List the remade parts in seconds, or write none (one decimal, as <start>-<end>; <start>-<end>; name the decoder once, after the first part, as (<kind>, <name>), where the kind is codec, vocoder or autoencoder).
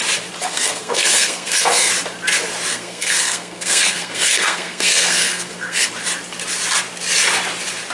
0.4-1.9 (codec, SNAC); 2.7-5.9